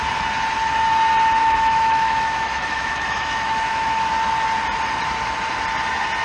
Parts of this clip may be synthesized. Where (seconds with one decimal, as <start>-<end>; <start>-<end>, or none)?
1.4-4.1